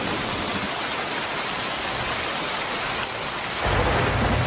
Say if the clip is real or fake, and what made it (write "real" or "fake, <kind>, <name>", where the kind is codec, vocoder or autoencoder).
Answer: real